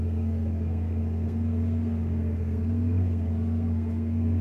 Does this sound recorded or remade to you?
remade